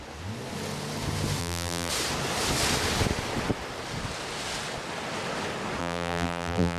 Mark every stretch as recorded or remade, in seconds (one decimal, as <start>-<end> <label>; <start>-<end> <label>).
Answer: 0.0-1.4 recorded; 1.4-1.9 remade; 1.9-5.8 recorded; 5.8-6.8 remade